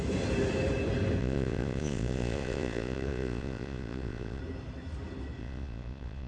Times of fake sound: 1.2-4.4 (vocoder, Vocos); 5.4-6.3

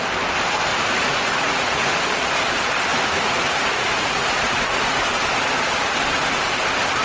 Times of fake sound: 0.7-2.0 (vocoder, Vocos); 2.9-4.8